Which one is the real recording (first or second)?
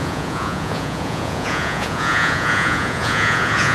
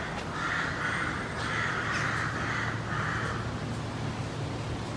second